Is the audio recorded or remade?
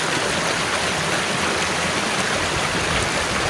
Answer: recorded